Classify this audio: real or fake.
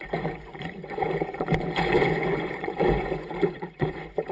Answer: fake